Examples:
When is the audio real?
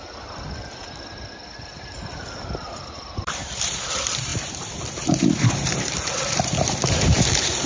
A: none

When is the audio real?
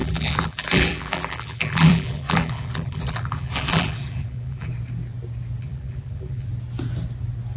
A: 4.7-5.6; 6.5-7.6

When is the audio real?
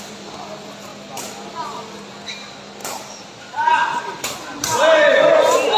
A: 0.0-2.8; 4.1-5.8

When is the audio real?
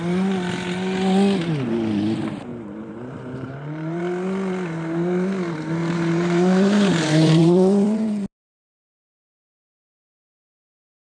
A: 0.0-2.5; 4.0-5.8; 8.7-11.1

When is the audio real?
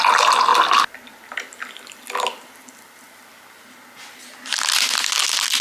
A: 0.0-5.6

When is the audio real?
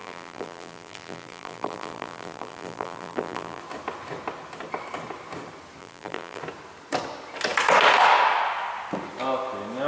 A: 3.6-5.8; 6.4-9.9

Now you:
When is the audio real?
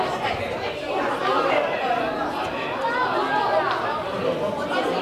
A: 0.0-5.0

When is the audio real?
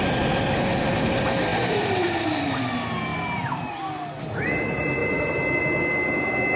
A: 0.0-1.5; 2.6-3.1; 3.7-6.6